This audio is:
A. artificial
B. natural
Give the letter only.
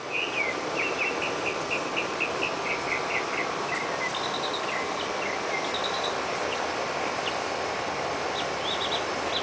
B